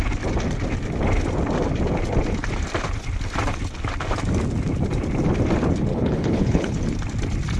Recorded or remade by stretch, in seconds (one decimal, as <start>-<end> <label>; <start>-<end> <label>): 0.0-5.9 recorded; 5.9-6.8 remade; 6.8-7.6 recorded